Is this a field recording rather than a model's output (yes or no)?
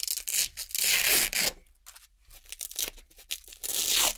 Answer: yes